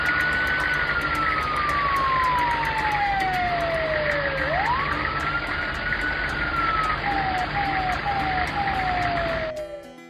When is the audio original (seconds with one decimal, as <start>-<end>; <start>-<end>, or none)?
0.0-3.0; 3.5-10.1